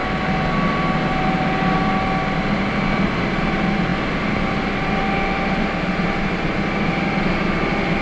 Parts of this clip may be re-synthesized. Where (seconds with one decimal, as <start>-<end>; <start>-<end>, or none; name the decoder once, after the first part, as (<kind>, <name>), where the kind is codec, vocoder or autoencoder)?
none